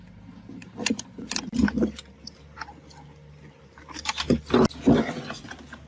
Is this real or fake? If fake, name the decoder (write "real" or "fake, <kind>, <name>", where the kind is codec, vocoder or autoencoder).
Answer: real